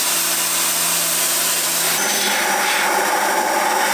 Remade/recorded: recorded